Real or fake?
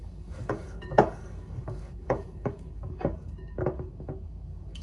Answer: fake